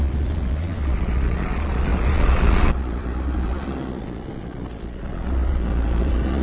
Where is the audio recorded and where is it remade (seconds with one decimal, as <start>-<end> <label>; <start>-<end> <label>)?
0.0-6.4 remade